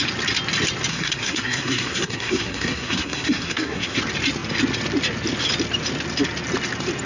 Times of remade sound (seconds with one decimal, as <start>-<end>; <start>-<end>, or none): 0.9-4.0